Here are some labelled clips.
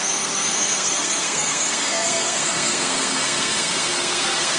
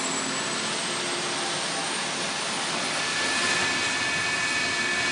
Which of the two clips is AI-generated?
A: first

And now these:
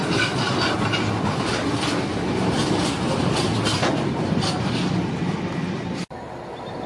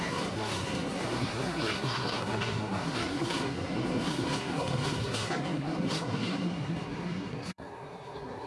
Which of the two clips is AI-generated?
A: second